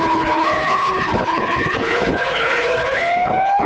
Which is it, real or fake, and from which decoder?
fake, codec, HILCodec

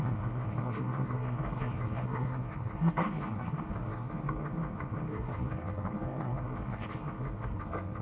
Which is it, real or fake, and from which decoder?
fake, codec, SNAC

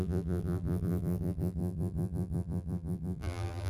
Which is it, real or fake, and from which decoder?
fake, vocoder, BigVGAN v2